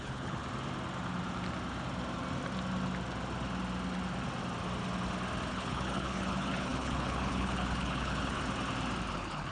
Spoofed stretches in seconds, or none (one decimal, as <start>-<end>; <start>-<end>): 0.0-0.4; 5.5-8.4; 9.1-9.5